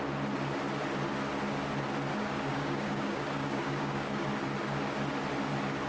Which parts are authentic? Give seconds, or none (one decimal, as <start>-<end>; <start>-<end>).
0.0-2.1; 4.3-5.9